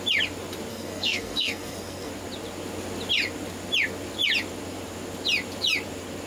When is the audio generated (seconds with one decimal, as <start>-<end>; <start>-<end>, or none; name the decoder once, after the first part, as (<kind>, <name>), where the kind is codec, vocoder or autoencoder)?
0.7-2.1 (codec, SNAC)